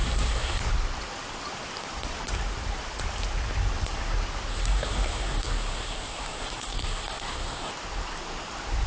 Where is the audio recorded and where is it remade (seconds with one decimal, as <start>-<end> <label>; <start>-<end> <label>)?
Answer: 0.0-0.6 remade; 0.6-4.5 recorded; 4.5-7.7 remade; 7.7-8.9 recorded